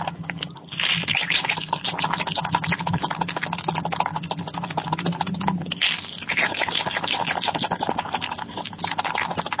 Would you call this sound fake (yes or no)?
no